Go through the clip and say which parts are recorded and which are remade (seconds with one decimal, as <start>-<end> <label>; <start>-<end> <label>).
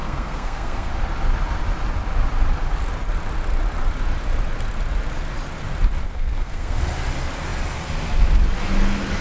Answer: 0.0-0.9 remade; 0.9-6.1 recorded; 6.1-6.8 remade; 6.8-9.2 recorded